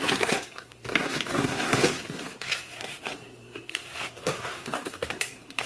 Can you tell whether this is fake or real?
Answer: fake